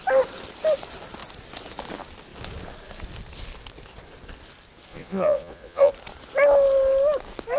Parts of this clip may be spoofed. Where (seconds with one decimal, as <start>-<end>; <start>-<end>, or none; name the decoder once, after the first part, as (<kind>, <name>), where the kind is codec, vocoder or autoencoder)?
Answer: 4.9-5.9 (vocoder, Vocos)